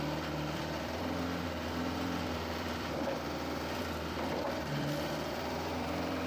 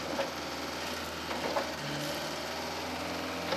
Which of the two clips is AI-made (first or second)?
first